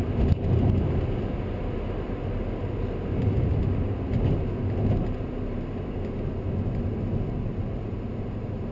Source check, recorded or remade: recorded